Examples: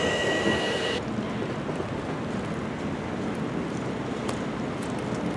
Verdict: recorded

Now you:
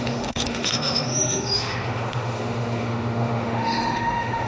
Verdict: remade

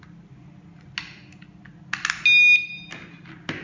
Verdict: recorded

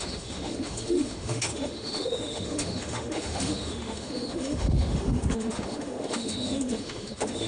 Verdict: remade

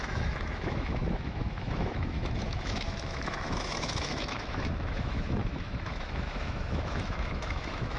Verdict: remade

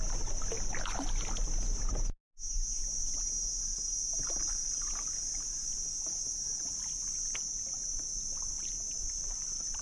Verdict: recorded